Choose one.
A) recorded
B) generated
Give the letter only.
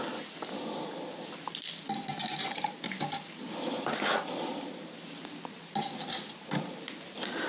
A